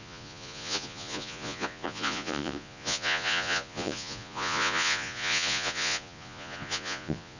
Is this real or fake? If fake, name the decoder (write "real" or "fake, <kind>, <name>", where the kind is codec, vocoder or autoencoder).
fake, vocoder, Vocos